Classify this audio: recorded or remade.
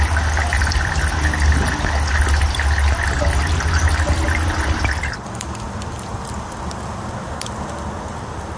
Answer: recorded